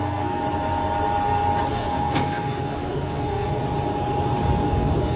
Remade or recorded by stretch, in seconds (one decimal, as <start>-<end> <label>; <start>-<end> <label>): 0.0-0.4 remade; 0.4-1.7 recorded; 1.7-3.6 remade; 3.6-4.5 recorded; 4.5-5.2 remade